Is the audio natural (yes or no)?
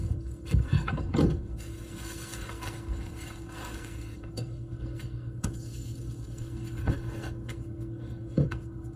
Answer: no